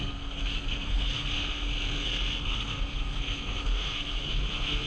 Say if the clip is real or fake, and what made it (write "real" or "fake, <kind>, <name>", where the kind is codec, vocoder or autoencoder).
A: fake, codec, SNAC